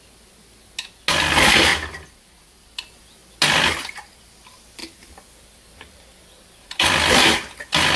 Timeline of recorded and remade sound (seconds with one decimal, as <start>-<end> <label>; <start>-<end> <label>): 0.0-1.7 recorded; 1.7-2.8 remade; 2.8-4.8 recorded; 4.8-7.1 remade; 7.1-8.0 recorded